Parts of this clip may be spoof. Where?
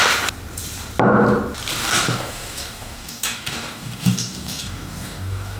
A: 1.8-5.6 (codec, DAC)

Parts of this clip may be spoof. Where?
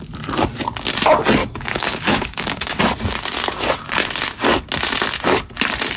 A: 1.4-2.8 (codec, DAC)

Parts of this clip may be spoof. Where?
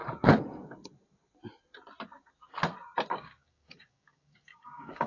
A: 3.1-5.1 (codec, DAC)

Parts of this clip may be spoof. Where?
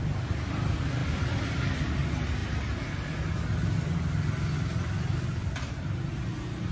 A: none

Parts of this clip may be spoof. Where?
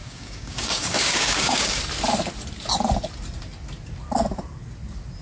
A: 0.0-1.8 (codec, DAC)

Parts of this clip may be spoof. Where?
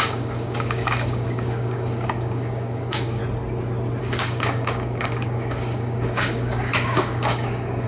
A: 0.0-3.2 (codec, DAC); 4.0-7.9